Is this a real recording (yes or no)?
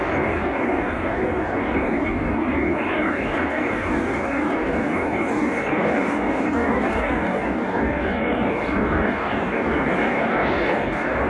no